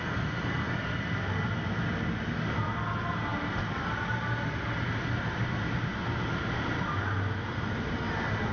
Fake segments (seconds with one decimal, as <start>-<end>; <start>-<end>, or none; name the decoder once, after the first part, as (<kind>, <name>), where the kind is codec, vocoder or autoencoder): none

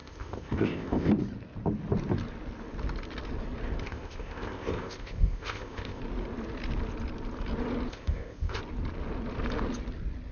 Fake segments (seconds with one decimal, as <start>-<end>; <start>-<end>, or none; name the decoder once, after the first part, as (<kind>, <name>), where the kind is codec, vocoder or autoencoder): 0.0-1.1 (codec, ZipCodec); 3.8-6.0; 7.9-8.6